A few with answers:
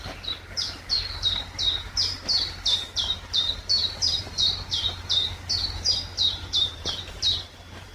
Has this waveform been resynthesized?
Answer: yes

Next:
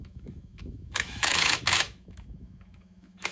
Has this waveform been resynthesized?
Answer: yes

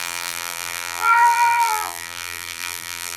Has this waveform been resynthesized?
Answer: yes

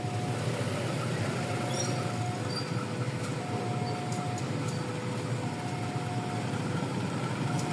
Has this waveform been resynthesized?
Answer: no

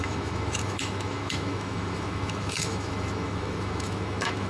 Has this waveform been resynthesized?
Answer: yes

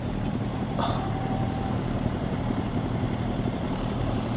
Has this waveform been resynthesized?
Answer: yes